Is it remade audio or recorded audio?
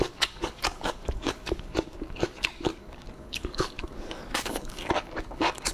remade